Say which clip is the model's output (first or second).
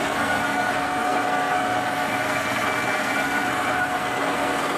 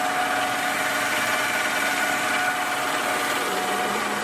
first